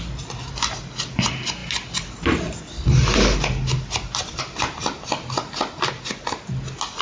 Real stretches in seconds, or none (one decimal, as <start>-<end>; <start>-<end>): 0.0-7.0